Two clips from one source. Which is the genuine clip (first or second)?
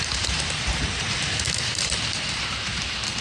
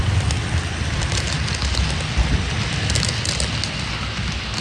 second